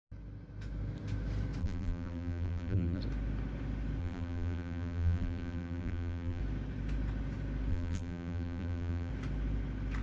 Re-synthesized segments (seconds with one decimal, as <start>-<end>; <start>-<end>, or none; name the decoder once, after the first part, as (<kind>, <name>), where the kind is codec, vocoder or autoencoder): 1.6-3.0 (vocoder, BigVGAN v2); 4.0-6.4; 7.7-9.1